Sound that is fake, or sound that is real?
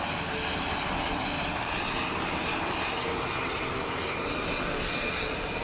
real